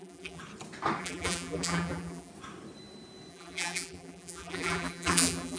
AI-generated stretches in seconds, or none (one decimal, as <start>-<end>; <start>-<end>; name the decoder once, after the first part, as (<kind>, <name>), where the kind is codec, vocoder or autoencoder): 0.0-0.4 (vocoder, BigVGAN v2); 1.0-2.3; 3.3-5.6